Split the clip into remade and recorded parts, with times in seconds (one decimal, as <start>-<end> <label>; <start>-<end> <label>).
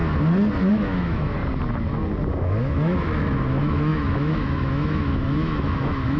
0.0-0.7 recorded; 0.7-1.4 remade; 1.4-2.4 recorded; 2.4-6.2 remade